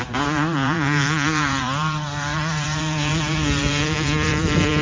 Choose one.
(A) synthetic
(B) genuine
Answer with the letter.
A